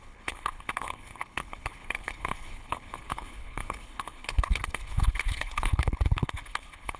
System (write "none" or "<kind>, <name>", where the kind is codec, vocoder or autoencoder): codec, HILCodec